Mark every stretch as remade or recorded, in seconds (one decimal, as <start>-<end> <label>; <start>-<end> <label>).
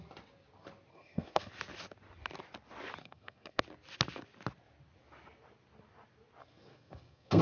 0.0-0.9 recorded; 0.9-1.5 remade; 1.5-3.0 recorded; 3.0-3.6 remade; 3.6-6.4 recorded; 6.4-7.4 remade